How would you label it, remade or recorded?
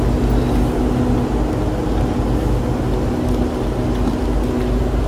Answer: recorded